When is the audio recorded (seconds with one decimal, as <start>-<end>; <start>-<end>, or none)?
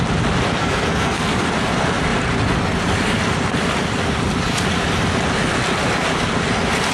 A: 0.0-0.6; 1.5-6.9